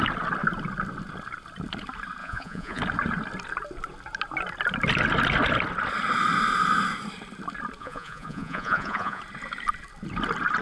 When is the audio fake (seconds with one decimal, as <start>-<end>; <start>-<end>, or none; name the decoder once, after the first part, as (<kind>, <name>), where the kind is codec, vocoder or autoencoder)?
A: 2.2-2.8 (vocoder, Vocos); 7.8-9.2